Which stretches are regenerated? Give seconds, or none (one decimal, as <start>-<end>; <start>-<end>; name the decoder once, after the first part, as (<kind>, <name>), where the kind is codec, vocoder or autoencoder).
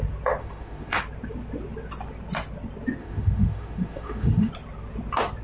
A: 0.4-1.0 (autoencoder, DAC-VAE); 3.0-4.5